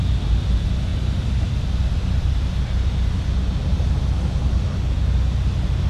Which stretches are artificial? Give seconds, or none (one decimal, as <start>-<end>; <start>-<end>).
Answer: none